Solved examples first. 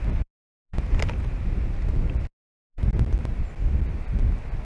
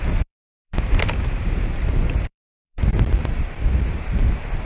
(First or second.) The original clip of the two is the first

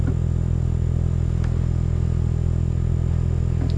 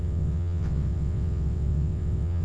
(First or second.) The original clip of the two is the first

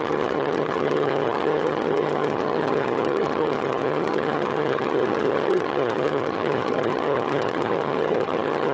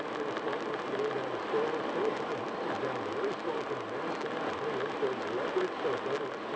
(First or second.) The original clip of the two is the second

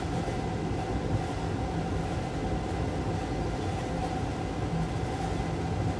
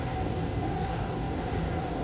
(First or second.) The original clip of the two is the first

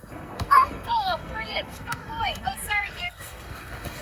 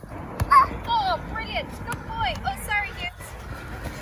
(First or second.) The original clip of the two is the second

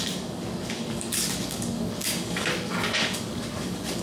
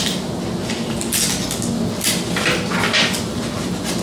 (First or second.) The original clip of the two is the second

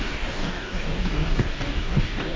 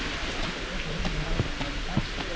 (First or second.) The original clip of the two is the second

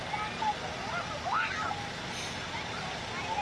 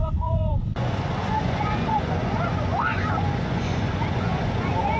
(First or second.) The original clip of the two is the first